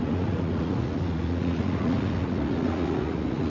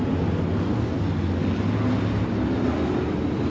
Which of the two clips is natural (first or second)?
second